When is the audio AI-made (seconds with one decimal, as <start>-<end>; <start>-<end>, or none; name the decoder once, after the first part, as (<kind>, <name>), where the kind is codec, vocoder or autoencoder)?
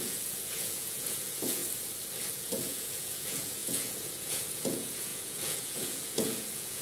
0.0-1.6 (vocoder, Vocos); 2.3-6.8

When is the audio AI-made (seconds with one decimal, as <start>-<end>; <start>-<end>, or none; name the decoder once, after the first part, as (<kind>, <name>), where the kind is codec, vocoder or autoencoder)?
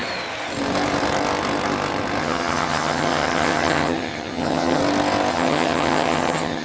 2.2-4.8 (vocoder, HiFi-GAN); 5.3-6.6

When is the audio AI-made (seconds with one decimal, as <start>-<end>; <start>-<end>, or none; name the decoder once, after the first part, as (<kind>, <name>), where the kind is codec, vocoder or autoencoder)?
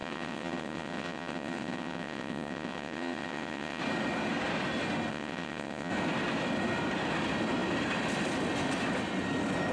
0.0-3.8 (vocoder, WaveNeXt); 5.1-5.9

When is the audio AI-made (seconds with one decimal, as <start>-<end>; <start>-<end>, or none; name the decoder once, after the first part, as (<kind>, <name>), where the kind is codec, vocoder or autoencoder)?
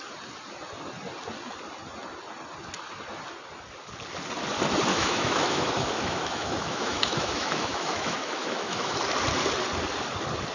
4.9-9.0 (autoencoder, DAC-VAE)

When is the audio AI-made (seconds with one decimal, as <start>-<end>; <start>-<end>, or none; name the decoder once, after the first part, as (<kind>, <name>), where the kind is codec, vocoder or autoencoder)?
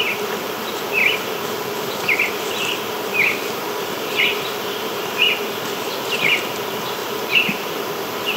0.0-8.4 (vocoder, BigVGAN v2)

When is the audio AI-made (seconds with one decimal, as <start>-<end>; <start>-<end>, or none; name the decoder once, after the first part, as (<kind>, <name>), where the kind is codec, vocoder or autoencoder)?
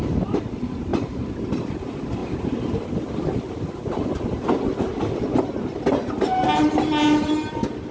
none